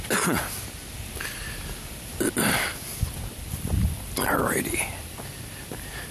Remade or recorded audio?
remade